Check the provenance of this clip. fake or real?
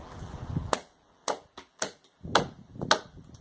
fake